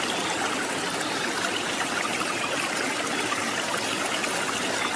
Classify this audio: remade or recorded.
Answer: recorded